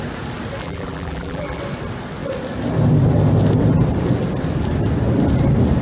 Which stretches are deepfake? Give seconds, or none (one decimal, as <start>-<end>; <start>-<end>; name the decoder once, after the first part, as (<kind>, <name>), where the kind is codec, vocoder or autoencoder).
0.6-1.6 (vocoder, BigVGAN v2)